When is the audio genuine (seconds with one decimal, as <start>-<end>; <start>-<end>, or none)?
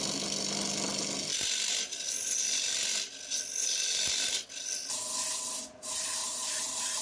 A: 0.0-6.2